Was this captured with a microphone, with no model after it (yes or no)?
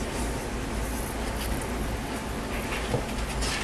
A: yes